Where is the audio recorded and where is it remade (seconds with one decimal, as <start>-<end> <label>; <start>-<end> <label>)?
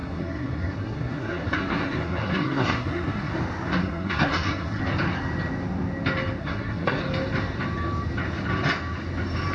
0.0-3.3 remade; 3.3-3.8 recorded; 3.8-4.8 remade; 4.8-6.4 recorded; 6.4-7.0 remade; 7.0-9.5 recorded